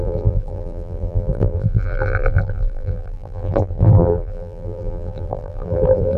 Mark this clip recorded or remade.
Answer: remade